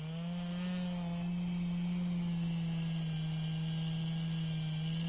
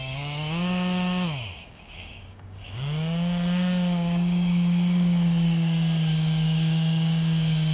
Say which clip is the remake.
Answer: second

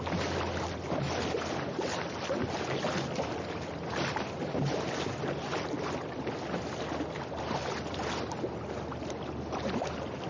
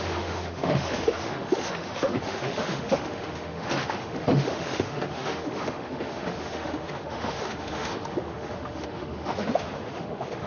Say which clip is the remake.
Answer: second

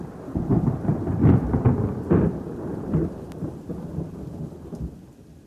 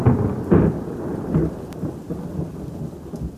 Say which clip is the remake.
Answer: first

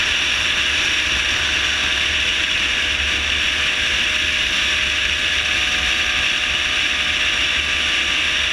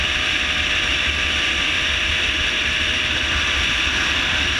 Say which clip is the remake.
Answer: second